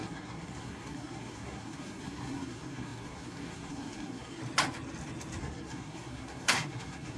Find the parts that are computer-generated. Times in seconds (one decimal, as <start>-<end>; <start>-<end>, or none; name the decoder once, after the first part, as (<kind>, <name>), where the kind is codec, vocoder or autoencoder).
0.0-4.4 (codec, SNAC); 5.4-7.2